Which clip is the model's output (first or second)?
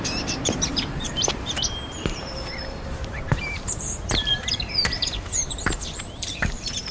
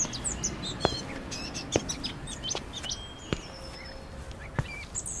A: first